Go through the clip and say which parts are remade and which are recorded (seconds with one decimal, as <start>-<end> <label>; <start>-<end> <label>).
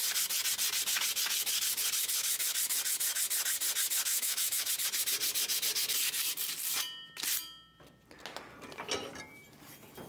0.0-4.1 recorded; 4.1-4.7 remade; 4.7-10.1 recorded